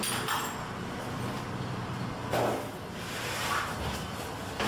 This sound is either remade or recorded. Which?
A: recorded